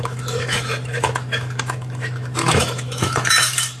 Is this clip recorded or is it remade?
remade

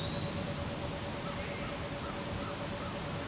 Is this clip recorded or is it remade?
recorded